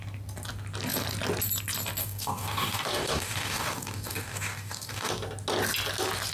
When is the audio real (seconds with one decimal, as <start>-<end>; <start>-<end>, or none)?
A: 0.0-2.0; 5.1-6.3